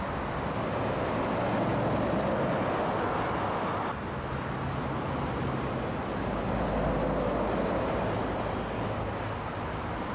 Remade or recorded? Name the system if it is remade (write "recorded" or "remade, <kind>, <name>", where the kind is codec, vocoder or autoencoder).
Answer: recorded